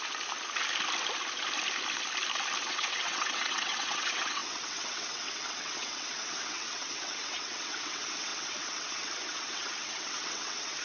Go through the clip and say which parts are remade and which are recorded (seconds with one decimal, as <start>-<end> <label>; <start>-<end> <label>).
0.0-2.6 recorded; 2.6-10.8 remade